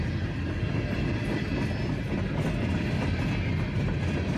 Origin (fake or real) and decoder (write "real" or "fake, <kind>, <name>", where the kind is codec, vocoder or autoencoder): real